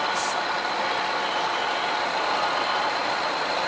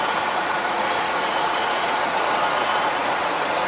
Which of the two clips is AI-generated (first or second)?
second